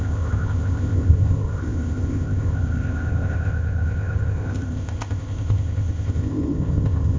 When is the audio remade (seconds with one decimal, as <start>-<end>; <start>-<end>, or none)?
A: 0.0-7.2